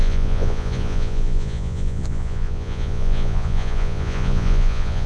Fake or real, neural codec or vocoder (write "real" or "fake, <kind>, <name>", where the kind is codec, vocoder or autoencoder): fake, vocoder, Vocos